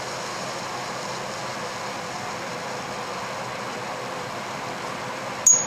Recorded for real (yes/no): yes